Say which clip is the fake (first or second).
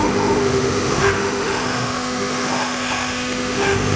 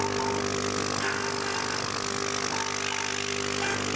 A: first